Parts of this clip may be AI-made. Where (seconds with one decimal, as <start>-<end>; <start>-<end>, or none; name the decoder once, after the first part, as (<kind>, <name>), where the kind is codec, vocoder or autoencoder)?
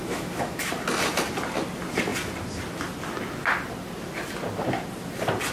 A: 0.0-0.7 (autoencoder, DAC-VAE)